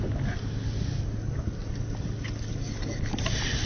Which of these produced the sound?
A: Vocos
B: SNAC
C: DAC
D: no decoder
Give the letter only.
D